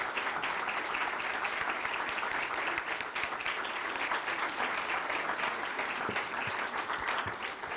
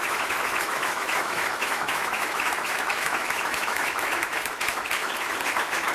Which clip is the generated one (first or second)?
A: second